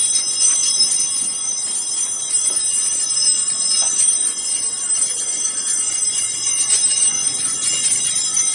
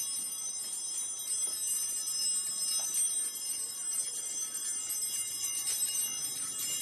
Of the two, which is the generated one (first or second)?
first